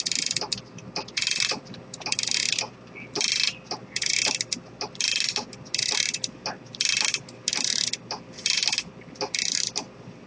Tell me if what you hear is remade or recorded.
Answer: recorded